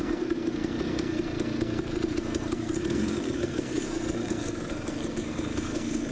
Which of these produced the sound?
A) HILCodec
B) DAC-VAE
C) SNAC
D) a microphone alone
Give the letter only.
C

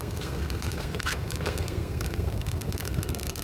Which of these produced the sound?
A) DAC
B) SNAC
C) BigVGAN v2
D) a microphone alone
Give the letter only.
B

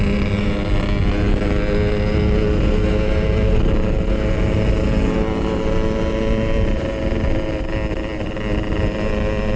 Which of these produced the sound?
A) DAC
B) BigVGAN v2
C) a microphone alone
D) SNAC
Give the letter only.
C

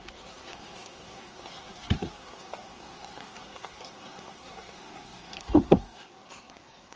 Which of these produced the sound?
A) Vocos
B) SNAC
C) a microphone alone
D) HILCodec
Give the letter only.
B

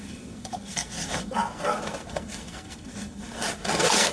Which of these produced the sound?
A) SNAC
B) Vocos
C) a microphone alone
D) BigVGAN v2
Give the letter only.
A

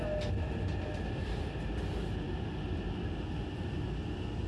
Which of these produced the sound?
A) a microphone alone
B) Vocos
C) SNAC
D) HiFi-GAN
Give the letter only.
A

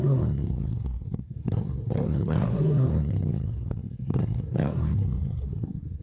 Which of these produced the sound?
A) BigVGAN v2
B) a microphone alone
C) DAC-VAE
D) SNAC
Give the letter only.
D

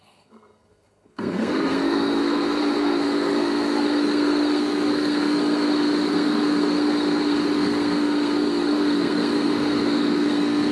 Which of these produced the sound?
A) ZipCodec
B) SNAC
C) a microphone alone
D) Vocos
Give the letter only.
B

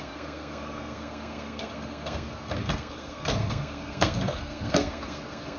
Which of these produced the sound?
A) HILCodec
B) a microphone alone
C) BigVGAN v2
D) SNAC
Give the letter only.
D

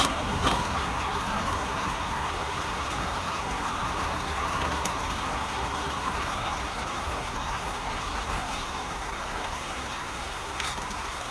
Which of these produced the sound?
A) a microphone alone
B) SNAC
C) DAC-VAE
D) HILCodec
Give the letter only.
B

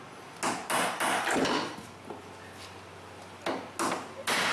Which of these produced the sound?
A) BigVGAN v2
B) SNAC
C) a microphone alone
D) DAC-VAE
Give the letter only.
C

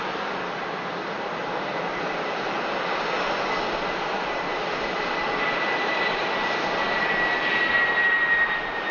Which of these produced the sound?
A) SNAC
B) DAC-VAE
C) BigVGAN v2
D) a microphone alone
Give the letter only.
D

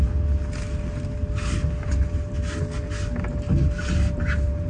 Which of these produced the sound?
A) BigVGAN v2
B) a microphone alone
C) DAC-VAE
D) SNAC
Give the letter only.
B